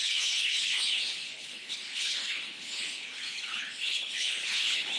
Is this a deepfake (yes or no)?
yes